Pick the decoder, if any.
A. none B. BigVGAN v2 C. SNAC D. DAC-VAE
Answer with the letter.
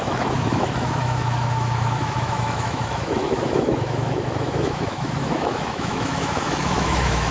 D